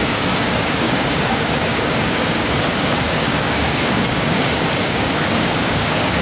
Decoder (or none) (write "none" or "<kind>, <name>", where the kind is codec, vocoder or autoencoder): codec, DAC